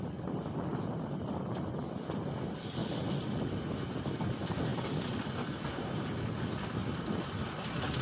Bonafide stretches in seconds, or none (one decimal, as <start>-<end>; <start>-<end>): 0.0-0.7; 2.0-8.0